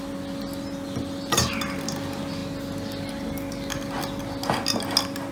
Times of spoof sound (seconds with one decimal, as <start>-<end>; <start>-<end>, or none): none